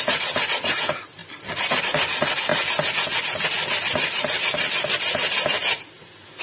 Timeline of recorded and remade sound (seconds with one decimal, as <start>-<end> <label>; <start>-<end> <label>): 0.0-6.4 recorded